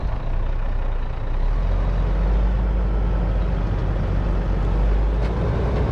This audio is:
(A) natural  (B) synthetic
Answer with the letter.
A